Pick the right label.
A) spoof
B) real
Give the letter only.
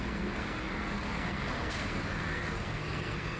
A